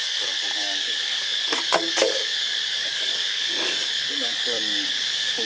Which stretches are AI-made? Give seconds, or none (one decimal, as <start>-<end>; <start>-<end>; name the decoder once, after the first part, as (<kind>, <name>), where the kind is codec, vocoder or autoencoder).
0.0-5.5 (codec, DAC)